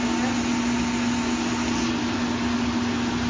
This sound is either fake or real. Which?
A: real